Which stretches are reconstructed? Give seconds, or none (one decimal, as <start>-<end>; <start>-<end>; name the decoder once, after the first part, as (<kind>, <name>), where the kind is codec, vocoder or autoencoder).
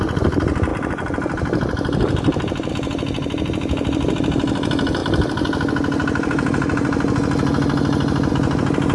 none